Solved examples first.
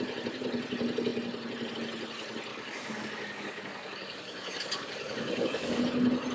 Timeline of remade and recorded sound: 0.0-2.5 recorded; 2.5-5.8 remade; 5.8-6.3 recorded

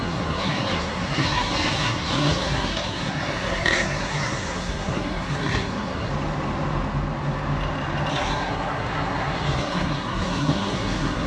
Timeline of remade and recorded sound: 0.0-6.1 remade; 6.1-8.1 recorded; 8.1-11.3 remade

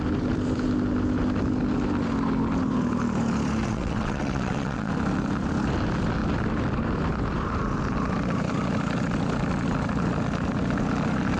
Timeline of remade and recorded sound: 0.0-3.6 recorded; 3.6-4.9 remade; 4.9-11.4 recorded

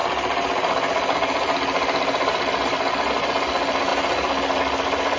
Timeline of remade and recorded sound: 0.0-5.2 recorded

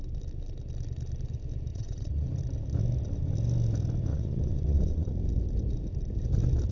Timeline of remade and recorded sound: 0.0-1.7 recorded; 1.7-2.3 remade; 2.3-4.1 recorded; 4.1-5.1 remade; 5.1-6.7 recorded

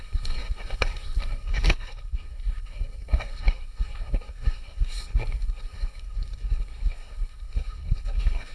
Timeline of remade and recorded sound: 0.0-8.5 remade

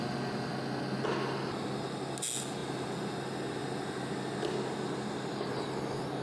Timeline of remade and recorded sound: 0.0-6.2 recorded

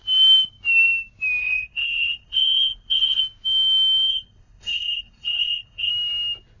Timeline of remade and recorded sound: 0.0-1.4 recorded; 1.4-3.2 remade; 3.2-4.1 recorded; 4.1-5.9 remade; 5.9-6.6 recorded